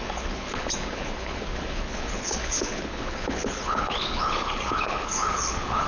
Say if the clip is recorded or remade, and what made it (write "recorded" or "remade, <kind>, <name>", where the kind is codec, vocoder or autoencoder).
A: remade, codec, HILCodec